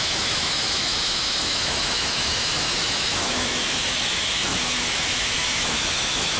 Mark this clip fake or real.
fake